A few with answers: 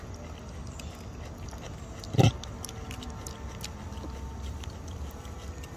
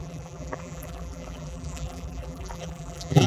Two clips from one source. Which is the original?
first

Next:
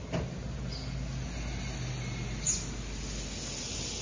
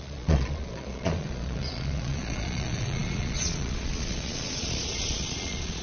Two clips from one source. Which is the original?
first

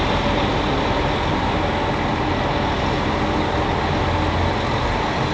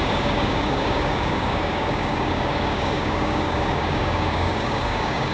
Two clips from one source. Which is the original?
first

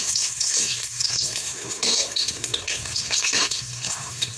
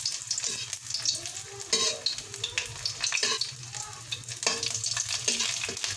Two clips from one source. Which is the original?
second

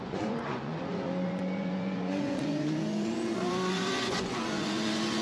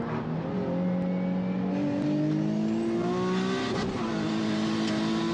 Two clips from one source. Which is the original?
second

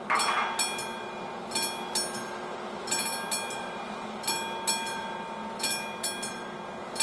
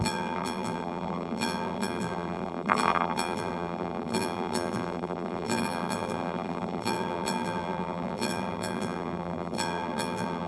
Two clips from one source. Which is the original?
first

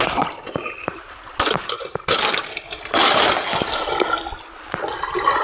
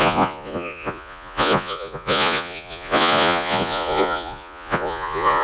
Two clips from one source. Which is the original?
first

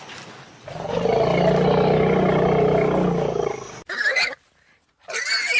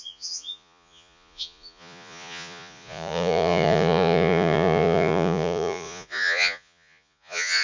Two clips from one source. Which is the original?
first